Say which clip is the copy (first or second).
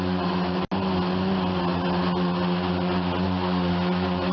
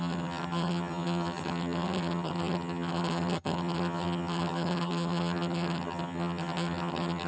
second